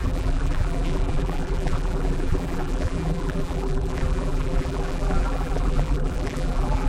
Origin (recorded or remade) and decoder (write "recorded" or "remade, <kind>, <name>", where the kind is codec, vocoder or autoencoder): remade, vocoder, BigVGAN v2